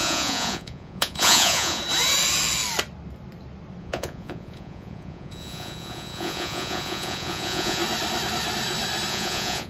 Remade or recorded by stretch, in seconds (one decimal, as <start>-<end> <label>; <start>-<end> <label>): 0.0-1.8 remade; 1.8-3.8 recorded; 3.8-7.8 remade; 7.8-9.1 recorded; 9.1-9.7 remade